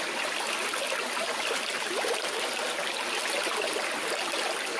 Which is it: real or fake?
real